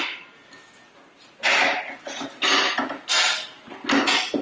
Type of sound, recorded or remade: recorded